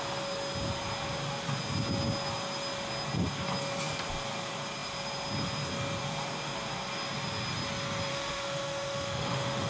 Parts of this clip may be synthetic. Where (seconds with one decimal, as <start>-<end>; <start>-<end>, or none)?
8.1-9.7